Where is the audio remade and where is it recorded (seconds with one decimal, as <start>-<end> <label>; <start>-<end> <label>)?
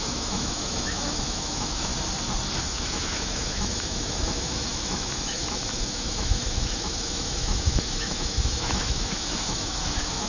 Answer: 0.0-1.9 remade; 1.9-2.6 recorded; 2.6-10.3 remade